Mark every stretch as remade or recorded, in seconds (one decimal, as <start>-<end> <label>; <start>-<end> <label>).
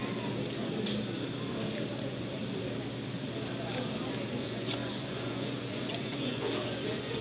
0.0-2.0 recorded; 2.0-2.4 remade; 2.4-4.3 recorded; 4.3-7.2 remade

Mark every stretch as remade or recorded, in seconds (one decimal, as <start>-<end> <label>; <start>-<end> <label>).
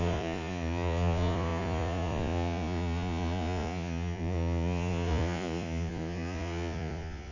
0.0-7.3 remade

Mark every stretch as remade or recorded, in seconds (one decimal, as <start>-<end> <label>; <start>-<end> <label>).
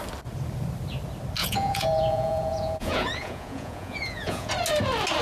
0.0-1.4 recorded; 1.4-4.5 remade; 4.5-5.2 recorded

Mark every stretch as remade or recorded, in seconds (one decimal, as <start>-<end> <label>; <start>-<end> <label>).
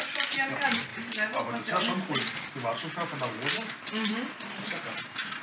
0.0-5.4 recorded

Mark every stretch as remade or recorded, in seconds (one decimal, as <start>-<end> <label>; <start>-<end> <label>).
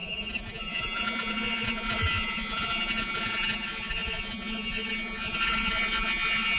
0.0-6.6 remade